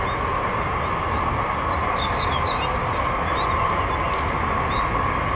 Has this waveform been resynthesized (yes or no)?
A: no